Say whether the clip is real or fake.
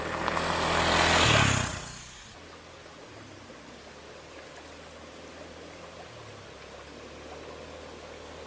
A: real